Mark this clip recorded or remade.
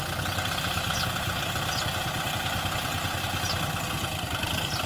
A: recorded